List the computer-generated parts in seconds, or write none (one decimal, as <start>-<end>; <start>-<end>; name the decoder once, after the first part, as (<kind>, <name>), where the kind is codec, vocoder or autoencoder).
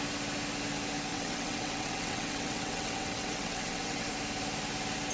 1.1-4.1 (vocoder, WaveNeXt)